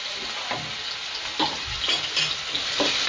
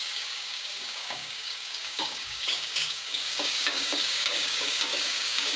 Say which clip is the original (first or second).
first